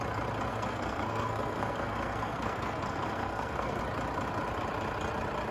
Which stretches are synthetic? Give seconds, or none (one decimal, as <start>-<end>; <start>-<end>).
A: 0.5-3.8